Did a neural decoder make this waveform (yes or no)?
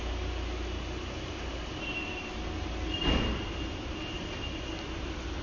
no